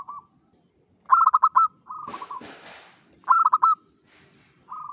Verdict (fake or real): real